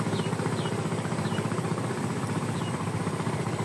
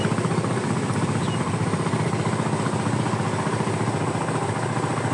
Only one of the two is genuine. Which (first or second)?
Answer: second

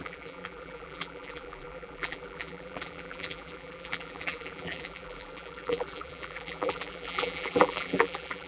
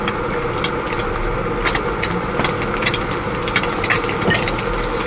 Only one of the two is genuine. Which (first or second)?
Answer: second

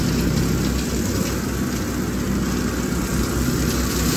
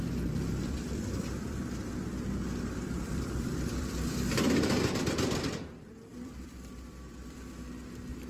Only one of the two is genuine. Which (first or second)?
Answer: first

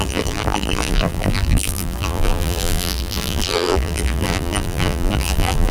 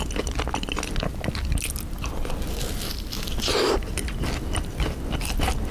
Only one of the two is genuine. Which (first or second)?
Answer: second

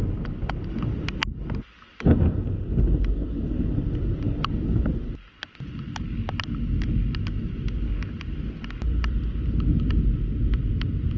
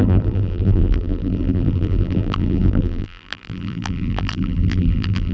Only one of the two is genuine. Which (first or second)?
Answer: first